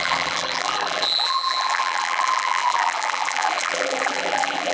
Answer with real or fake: fake